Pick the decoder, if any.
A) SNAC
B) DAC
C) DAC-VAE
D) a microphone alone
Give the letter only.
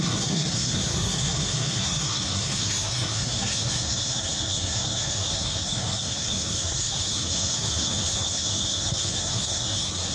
A